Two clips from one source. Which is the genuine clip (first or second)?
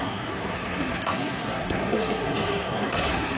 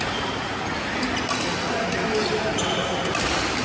second